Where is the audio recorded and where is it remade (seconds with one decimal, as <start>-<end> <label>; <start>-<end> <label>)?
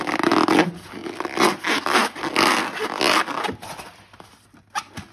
0.0-5.1 recorded